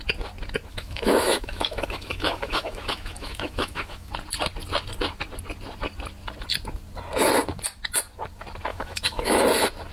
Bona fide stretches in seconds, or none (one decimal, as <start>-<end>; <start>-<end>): 0.0-0.7; 4.1-8.7; 9.4-9.9